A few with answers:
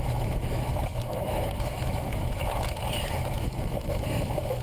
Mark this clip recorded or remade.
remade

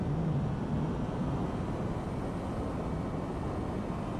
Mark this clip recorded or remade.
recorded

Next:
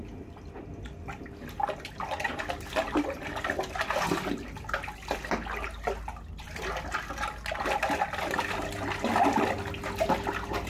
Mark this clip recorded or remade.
recorded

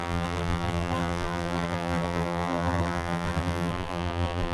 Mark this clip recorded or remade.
remade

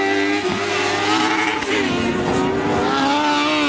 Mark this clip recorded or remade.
recorded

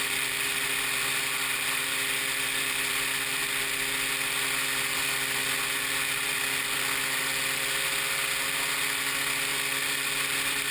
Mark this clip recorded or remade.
recorded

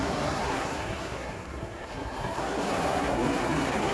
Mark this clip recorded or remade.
remade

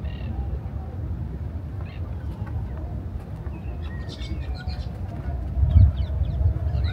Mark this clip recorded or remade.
recorded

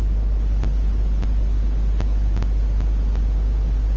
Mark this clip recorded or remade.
recorded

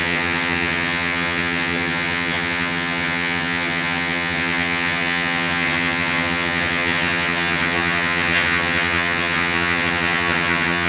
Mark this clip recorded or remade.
remade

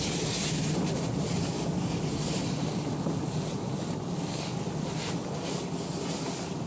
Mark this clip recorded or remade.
recorded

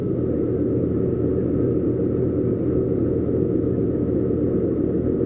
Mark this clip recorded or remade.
recorded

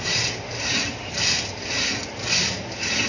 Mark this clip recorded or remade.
recorded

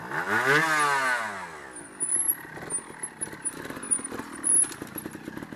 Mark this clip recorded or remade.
recorded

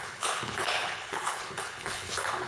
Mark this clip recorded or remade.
remade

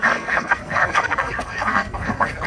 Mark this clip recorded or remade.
remade